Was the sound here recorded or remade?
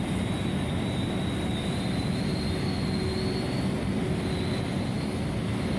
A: recorded